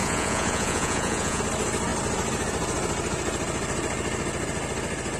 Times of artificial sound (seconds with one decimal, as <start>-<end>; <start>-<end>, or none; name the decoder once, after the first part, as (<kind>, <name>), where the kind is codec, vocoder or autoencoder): 0.0-1.4 (vocoder, Vocos)